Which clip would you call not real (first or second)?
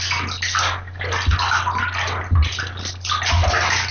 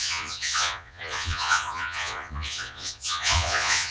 second